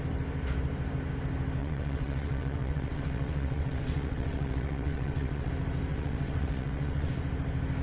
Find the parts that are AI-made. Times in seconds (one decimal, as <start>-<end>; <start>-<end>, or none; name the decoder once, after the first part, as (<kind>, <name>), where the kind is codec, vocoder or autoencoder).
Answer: 1.6-5.5 (vocoder, WaveNeXt); 5.9-7.1

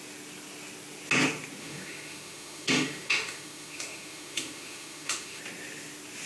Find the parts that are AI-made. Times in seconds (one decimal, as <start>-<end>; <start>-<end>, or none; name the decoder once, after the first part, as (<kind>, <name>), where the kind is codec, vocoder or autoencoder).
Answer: 1.6-5.4 (autoencoder, DAC-VAE)

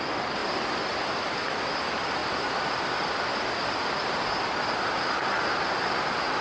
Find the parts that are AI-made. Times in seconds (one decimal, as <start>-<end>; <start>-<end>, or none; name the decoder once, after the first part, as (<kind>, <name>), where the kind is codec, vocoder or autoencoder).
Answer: none

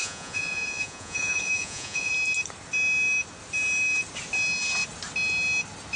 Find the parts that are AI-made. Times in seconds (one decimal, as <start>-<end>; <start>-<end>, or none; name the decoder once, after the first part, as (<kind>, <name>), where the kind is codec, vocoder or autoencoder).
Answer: 0.0-2.1 (vocoder, Vocos)

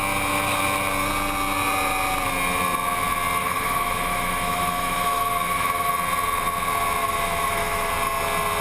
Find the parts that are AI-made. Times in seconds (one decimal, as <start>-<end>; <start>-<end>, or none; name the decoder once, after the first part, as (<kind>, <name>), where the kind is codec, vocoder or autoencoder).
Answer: 3.4-5.9 (autoencoder, DAC-VAE); 7.0-7.9

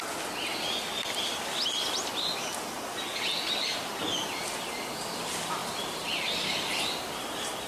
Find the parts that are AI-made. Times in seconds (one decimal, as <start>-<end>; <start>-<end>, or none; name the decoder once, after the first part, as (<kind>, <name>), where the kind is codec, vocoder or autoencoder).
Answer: 5.6-6.3 (vocoder, BigVGAN v2)

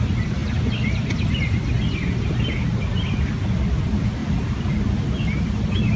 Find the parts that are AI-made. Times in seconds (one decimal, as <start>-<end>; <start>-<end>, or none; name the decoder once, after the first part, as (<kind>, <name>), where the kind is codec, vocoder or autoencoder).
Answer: none

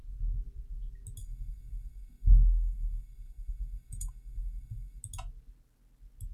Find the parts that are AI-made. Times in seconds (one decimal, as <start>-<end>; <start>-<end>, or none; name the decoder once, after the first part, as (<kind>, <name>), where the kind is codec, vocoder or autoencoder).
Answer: 1.2-5.0 (codec, SNAC)